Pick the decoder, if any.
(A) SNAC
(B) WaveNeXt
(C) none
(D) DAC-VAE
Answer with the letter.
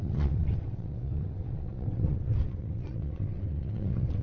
B